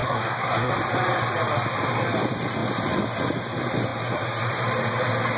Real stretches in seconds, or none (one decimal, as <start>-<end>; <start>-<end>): 0.7-5.4